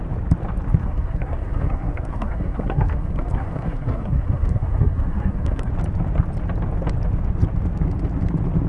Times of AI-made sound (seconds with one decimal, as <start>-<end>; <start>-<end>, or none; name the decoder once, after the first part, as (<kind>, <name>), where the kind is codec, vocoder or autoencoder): 0.8-5.7 (codec, SNAC)